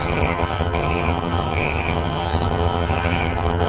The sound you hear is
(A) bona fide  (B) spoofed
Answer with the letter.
B